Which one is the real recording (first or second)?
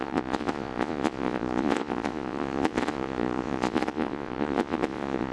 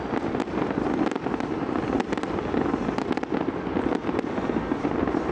second